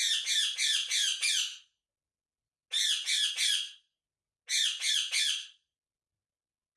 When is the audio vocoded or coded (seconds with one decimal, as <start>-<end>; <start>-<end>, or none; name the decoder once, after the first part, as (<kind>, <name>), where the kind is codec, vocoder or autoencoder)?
none